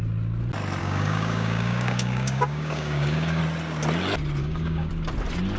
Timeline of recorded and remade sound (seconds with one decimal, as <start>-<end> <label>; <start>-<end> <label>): 0.0-0.8 recorded; 0.8-3.4 remade; 3.4-4.4 recorded; 4.4-4.9 remade; 4.9-5.6 recorded